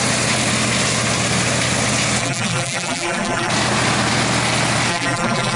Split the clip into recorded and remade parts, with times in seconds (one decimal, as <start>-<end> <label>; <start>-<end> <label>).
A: 0.0-2.2 recorded; 2.2-3.5 remade; 3.5-4.9 recorded; 4.9-5.6 remade